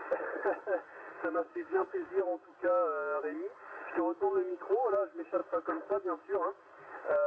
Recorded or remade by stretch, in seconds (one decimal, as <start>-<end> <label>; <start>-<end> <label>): 0.0-1.5 recorded; 1.5-2.1 remade; 2.1-7.3 recorded